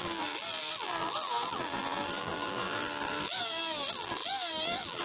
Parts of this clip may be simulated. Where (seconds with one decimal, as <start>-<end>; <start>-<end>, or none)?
0.0-5.0